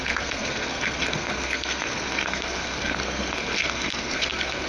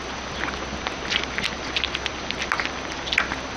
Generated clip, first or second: first